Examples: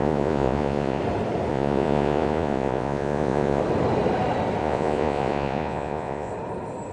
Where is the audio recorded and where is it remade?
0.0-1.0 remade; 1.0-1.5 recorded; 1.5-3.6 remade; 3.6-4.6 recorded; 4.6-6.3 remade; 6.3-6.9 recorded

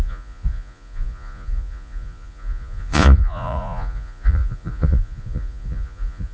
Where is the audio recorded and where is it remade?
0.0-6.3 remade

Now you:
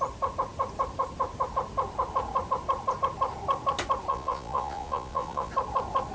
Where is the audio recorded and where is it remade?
0.0-4.1 recorded; 4.1-5.5 remade; 5.5-6.1 recorded